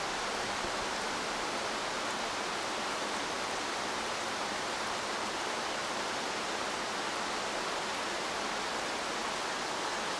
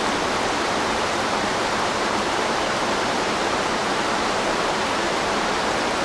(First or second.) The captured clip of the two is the first